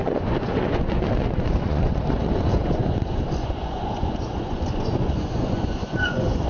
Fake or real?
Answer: fake